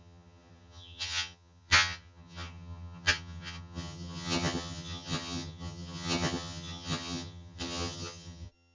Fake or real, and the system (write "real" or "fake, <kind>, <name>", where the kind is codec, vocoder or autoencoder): fake, vocoder, HiFi-GAN